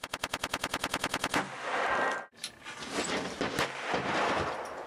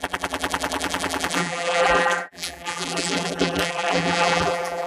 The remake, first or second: second